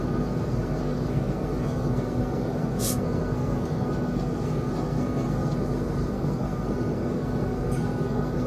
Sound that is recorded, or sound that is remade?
remade